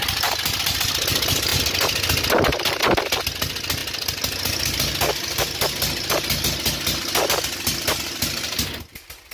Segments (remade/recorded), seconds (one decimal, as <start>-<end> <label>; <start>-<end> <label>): 0.0-9.3 recorded